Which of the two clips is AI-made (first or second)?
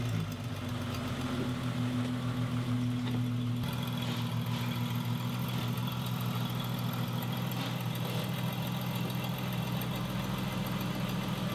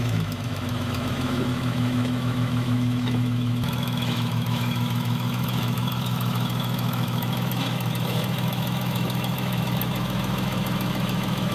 second